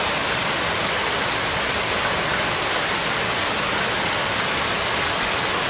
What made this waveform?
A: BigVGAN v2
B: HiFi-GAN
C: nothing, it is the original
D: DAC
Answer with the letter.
C